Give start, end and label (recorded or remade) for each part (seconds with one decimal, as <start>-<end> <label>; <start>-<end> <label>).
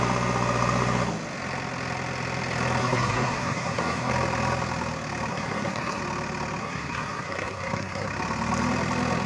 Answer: 0.0-2.8 recorded; 2.8-4.1 remade; 4.1-5.3 recorded; 5.3-6.0 remade; 6.0-6.6 recorded; 6.6-8.1 remade; 8.1-9.3 recorded